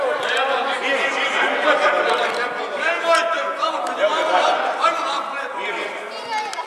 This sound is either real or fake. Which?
real